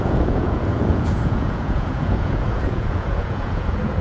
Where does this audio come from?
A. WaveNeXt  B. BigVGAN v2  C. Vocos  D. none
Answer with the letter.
C